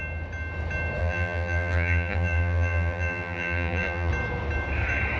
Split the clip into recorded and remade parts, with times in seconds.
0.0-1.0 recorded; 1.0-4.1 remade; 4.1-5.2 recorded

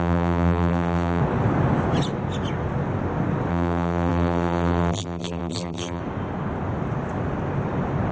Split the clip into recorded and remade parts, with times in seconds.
0.0-1.2 remade; 1.2-3.5 recorded; 3.5-6.0 remade; 6.0-8.1 recorded

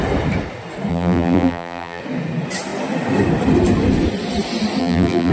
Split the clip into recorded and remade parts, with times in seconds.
0.0-0.9 recorded; 0.9-2.0 remade; 2.0-4.8 recorded; 4.8-5.3 remade

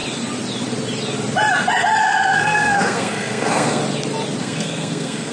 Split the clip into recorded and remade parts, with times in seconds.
0.0-2.0 recorded; 2.0-3.8 remade; 3.8-4.4 recorded; 4.4-5.3 remade

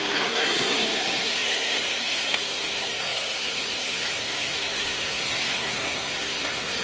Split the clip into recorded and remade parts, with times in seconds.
0.0-6.8 remade

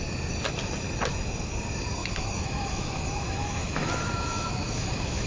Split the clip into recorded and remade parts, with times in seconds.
0.0-2.0 recorded; 2.0-5.3 remade

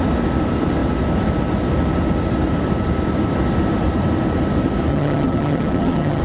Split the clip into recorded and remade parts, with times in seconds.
0.0-4.9 recorded; 4.9-6.2 remade